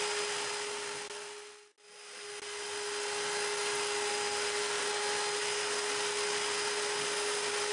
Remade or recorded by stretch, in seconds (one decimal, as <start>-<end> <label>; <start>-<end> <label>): 0.0-4.1 recorded; 4.1-4.8 remade; 4.8-7.7 recorded